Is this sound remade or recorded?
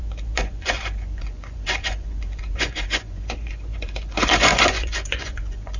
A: remade